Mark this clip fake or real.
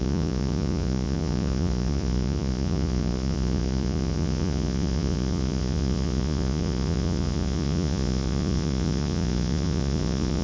fake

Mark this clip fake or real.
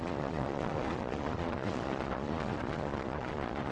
fake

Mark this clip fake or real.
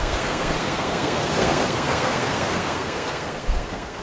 fake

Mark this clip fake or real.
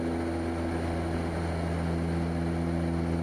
real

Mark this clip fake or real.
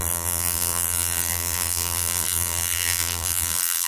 fake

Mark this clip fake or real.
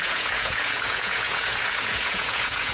fake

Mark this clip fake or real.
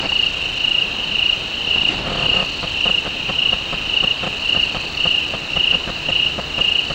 real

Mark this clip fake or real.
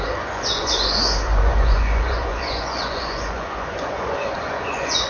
fake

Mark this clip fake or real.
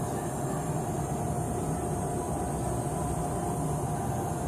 real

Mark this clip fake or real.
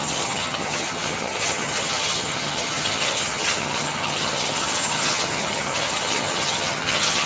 fake